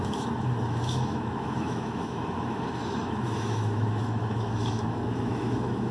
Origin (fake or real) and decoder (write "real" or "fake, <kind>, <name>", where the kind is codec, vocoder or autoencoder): fake, autoencoder, DAC-VAE